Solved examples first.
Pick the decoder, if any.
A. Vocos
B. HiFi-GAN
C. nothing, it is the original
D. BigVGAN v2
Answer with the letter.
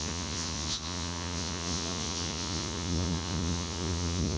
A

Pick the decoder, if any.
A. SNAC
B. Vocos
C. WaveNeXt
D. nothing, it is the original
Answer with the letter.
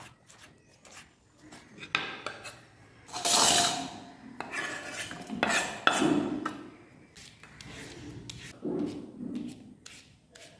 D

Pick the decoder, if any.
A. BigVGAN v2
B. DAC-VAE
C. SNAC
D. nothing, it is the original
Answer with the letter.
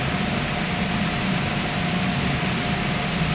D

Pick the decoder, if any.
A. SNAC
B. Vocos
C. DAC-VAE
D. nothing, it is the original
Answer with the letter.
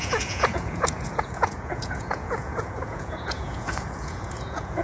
B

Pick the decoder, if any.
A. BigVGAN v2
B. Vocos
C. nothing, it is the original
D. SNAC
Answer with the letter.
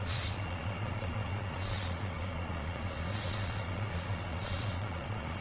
B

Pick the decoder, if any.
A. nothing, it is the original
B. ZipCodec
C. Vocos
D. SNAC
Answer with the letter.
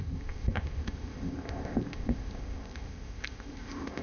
B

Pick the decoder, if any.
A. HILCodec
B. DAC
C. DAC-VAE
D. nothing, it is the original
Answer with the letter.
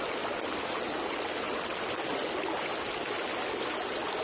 D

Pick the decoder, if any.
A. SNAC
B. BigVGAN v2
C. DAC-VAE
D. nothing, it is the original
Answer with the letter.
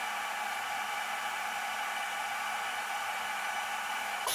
D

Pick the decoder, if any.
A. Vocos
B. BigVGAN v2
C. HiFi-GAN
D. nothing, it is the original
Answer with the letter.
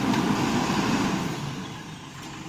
D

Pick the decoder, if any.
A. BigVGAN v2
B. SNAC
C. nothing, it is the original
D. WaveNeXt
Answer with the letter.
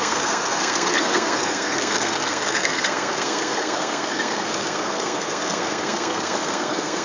B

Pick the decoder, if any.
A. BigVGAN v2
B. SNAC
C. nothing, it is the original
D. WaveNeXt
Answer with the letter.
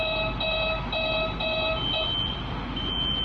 C